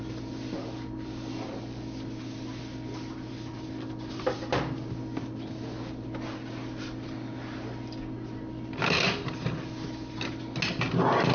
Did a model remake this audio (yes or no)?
no